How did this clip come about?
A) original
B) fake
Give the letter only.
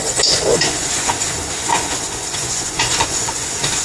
B